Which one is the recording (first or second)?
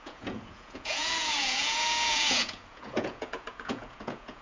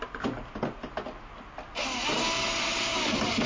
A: second